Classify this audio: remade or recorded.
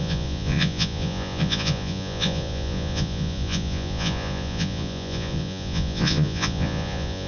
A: remade